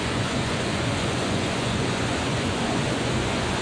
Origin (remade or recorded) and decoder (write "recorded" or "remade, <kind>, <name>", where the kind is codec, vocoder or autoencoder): remade, vocoder, Vocos